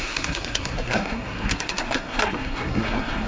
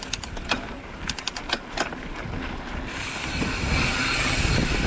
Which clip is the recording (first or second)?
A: second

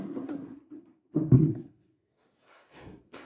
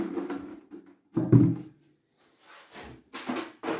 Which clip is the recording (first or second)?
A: second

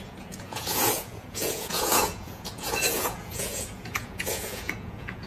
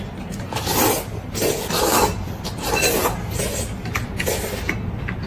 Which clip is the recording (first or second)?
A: second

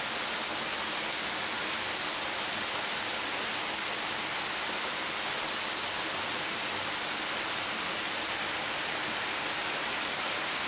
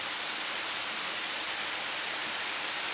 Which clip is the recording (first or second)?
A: first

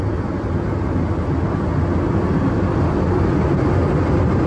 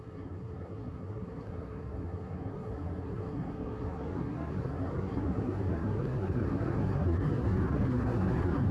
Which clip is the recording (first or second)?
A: first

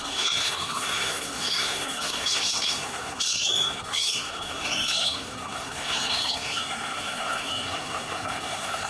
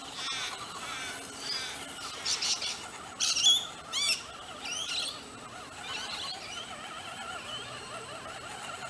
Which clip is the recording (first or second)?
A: second